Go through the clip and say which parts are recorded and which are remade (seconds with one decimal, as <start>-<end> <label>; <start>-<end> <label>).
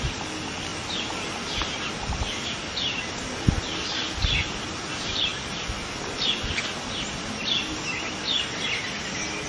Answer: 0.0-9.5 recorded